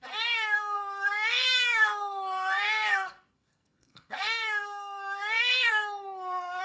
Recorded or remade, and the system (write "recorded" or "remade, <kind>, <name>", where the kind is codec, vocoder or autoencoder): remade, codec, SNAC